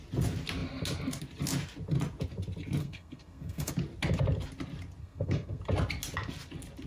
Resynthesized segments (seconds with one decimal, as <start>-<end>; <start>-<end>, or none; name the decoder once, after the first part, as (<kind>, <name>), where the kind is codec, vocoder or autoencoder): 2.8-3.7 (codec, SNAC); 5.0-5.6